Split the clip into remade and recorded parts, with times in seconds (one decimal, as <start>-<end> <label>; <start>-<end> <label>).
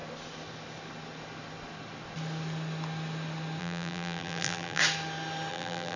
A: 0.0-3.6 recorded; 3.6-4.8 remade; 4.8-5.5 recorded; 5.5-6.0 remade